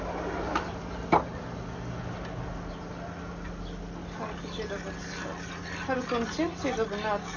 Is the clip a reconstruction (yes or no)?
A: no